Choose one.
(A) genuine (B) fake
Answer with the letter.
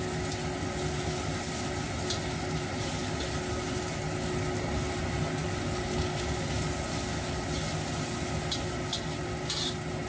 A